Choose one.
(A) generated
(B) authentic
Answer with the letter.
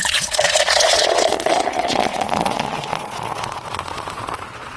A